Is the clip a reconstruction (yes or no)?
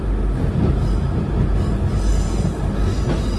no